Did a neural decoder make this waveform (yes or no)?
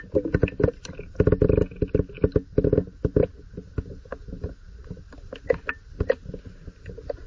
no